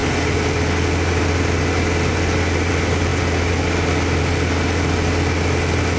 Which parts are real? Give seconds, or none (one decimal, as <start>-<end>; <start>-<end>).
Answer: 0.0-6.0